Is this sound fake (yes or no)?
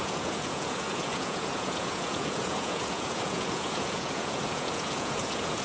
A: yes